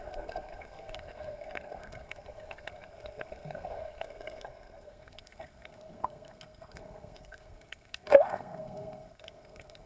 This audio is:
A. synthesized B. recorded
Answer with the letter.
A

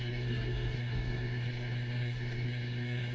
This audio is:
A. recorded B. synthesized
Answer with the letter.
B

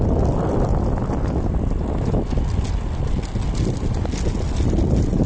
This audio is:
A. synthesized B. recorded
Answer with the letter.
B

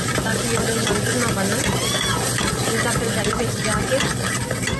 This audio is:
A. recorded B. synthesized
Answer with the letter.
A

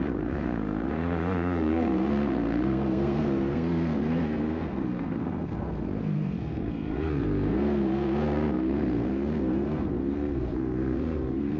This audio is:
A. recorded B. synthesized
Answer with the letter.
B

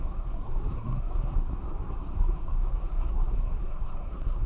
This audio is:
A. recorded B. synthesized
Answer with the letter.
B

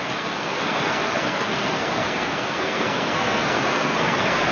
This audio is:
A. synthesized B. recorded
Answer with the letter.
A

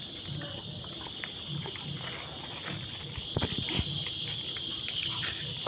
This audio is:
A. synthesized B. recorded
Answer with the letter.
B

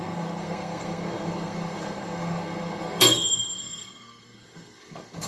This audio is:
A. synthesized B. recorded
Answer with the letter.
A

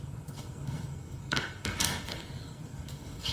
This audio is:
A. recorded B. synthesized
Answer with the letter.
B